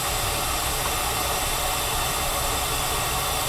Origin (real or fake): real